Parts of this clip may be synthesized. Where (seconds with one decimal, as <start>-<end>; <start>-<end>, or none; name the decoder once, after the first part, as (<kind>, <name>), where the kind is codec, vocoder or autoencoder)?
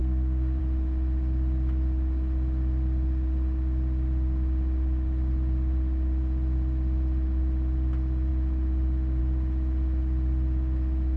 0.0-0.6 (codec, SNAC)